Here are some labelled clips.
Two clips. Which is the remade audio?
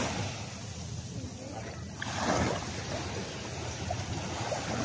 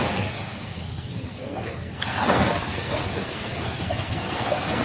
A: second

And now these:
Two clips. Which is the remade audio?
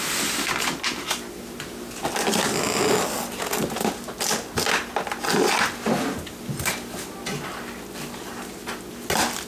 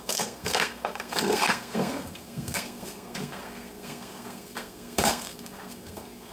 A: second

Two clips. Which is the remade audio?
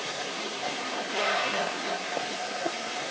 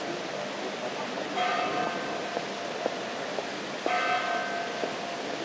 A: first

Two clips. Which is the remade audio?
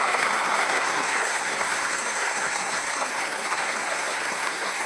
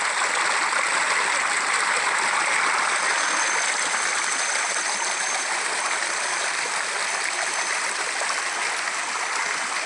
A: first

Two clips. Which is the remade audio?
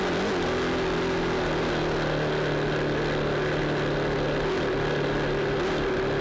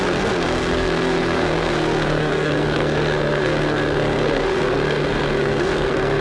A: second